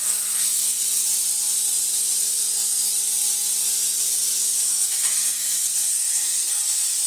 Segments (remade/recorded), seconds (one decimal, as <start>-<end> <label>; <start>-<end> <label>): 0.0-0.8 remade; 0.8-2.2 recorded; 2.2-2.9 remade; 2.9-4.4 recorded; 4.4-6.6 remade; 6.6-7.1 recorded